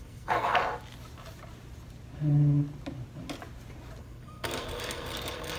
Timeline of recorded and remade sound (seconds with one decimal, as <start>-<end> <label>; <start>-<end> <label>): 0.0-0.6 remade; 0.6-4.0 recorded; 4.0-5.6 remade